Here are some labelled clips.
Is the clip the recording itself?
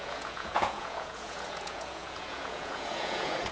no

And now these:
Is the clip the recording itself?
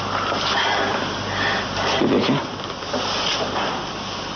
yes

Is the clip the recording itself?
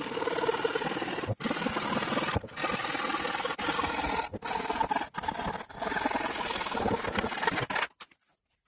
yes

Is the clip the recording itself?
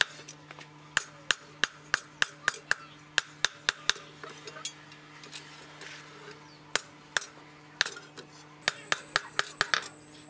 yes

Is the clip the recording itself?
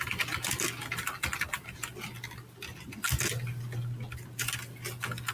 yes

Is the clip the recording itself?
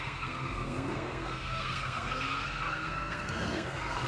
no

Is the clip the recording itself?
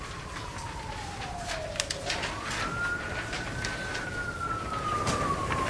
yes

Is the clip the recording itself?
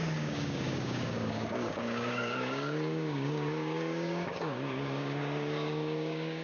no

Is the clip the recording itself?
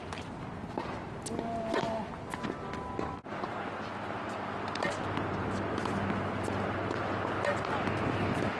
yes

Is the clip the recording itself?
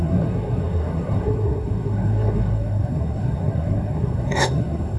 no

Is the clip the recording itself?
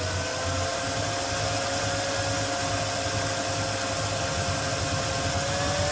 yes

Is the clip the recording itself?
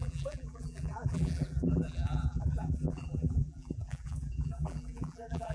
no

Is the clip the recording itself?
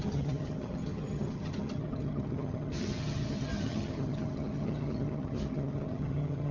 no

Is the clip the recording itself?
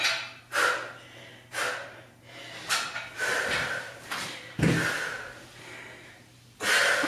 yes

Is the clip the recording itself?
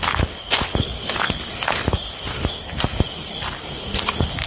yes